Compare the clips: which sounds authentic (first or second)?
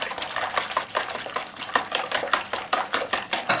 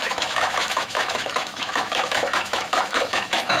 first